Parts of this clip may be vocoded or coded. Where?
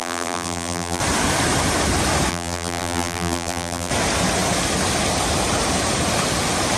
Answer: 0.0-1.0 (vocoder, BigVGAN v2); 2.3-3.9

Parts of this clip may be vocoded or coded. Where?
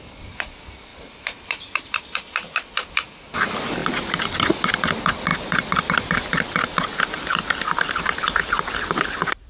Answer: 0.9-1.9 (vocoder, BigVGAN v2); 5.3-5.8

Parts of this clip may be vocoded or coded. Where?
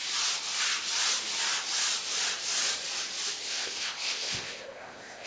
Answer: 3.4-5.3 (codec, ZipCodec)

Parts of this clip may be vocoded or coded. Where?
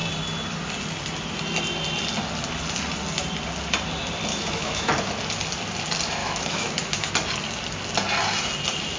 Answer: 4.3-4.9 (autoencoder, DAC-VAE); 6.2-7.1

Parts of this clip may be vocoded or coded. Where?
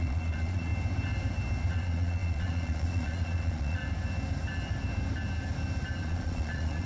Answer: 0.0-0.7 (vocoder, Vocos); 1.7-3.8; 6.0-6.9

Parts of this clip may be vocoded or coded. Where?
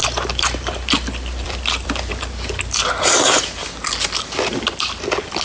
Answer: 0.0-2.1 (vocoder, BigVGAN v2)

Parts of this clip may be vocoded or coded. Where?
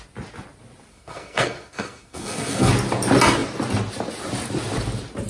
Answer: 0.9-2.7 (codec, SNAC)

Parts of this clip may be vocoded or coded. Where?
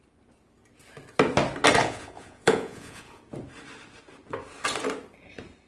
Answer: 1.8-3.2 (vocoder, Vocos)